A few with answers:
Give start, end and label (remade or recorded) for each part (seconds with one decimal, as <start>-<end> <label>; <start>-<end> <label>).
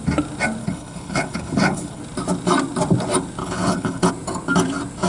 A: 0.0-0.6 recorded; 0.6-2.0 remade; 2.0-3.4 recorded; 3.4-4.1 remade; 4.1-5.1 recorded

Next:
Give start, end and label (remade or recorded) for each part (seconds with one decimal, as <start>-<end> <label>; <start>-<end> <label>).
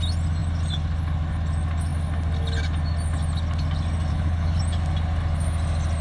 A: 0.0-4.1 recorded; 4.1-4.6 remade; 4.6-6.0 recorded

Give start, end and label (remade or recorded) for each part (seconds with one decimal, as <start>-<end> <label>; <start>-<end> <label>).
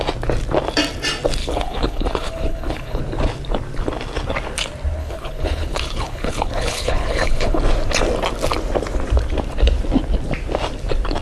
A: 0.0-1.4 recorded; 1.4-3.0 remade; 3.0-5.0 recorded; 5.0-7.6 remade; 7.6-11.2 recorded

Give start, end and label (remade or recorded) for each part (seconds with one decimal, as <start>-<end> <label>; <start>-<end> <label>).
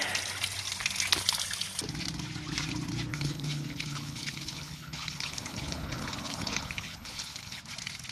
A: 0.0-3.1 recorded; 3.1-7.6 remade; 7.6-8.1 recorded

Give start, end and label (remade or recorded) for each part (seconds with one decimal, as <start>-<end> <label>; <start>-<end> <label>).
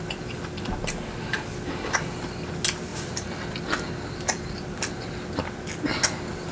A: 0.0-6.5 recorded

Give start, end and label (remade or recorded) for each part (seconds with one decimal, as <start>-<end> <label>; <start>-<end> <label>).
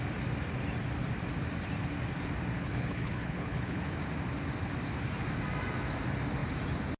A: 0.0-2.6 recorded; 2.6-3.8 remade; 3.8-7.0 recorded